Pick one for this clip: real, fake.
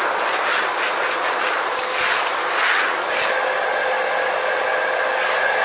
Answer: real